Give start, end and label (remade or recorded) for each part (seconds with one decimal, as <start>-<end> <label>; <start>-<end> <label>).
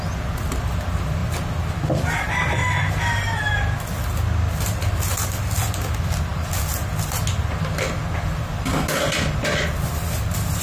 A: 0.0-10.6 recorded